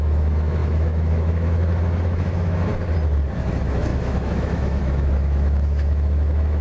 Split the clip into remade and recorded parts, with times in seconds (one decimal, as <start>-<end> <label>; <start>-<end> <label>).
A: 0.0-2.7 remade; 2.7-3.5 recorded; 3.5-6.6 remade